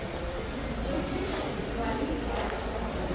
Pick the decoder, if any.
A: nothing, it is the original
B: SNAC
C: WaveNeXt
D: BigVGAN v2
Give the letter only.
D